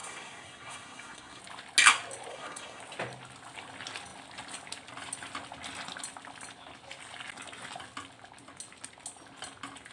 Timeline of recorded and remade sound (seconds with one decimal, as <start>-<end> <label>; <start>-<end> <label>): 0.0-1.4 remade; 1.4-2.3 recorded; 2.3-2.8 remade; 2.8-9.9 recorded